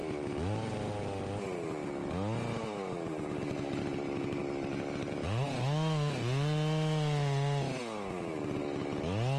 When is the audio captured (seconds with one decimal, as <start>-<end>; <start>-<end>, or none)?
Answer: 0.0-9.4